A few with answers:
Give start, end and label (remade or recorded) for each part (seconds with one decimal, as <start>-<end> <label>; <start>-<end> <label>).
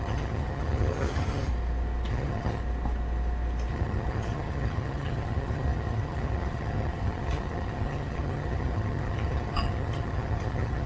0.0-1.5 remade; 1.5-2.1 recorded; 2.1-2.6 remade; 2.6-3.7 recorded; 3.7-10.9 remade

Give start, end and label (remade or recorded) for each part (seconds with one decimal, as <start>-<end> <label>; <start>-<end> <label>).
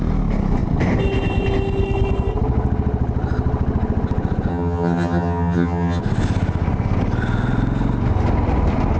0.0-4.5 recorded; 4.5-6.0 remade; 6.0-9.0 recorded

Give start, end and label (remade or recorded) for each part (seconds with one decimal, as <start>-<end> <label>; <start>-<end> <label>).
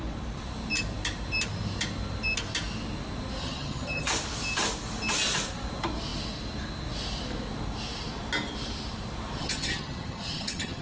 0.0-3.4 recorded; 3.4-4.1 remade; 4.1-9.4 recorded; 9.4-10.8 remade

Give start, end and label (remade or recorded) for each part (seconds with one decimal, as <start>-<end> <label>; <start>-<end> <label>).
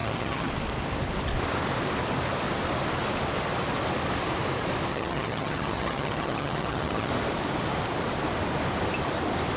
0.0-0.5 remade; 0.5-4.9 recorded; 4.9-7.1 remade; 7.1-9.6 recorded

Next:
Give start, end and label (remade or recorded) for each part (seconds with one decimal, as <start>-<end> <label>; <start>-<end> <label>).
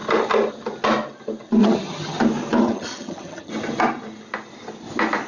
0.0-1.6 recorded; 1.6-2.2 remade; 2.2-2.6 recorded; 2.6-3.5 remade; 3.5-5.3 recorded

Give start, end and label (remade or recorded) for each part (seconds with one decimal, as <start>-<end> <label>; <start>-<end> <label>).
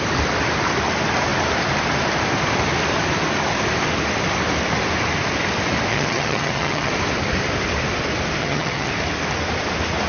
0.0-5.9 recorded; 5.9-6.9 remade; 6.9-8.4 recorded; 8.4-8.9 remade; 8.9-10.1 recorded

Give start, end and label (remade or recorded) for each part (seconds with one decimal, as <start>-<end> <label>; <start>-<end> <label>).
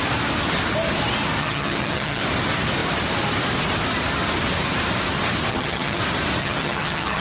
0.0-1.4 recorded; 1.4-2.2 remade; 2.2-5.5 recorded; 5.5-6.0 remade; 6.0-6.4 recorded; 6.4-7.2 remade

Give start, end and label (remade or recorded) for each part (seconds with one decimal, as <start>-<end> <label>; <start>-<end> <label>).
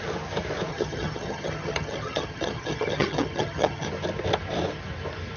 0.0-0.7 recorded; 0.7-3.9 remade; 3.9-5.4 recorded